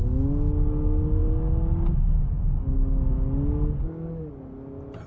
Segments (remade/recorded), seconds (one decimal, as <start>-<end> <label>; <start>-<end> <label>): 0.0-5.1 recorded